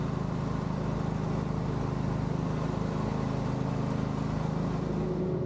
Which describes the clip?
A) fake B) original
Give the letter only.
B